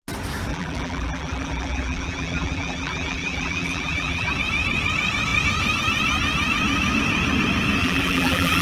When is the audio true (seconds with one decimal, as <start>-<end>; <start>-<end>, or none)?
0.0-0.5; 4.3-7.8